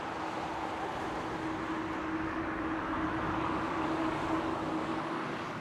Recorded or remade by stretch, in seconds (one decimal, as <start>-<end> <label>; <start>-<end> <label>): 0.0-2.0 recorded; 2.0-5.6 remade